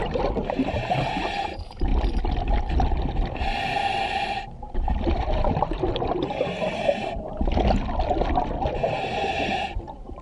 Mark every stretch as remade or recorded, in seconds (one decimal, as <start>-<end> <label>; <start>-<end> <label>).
0.0-1.9 remade; 1.9-4.0 recorded; 4.0-7.0 remade; 7.0-8.6 recorded; 8.6-10.2 remade